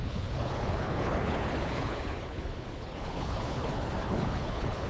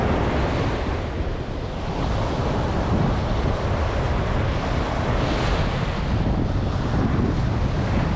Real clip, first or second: second